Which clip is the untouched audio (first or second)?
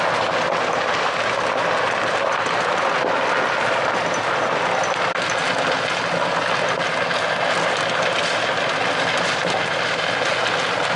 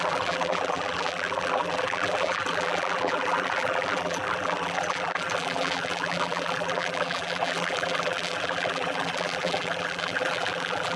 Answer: first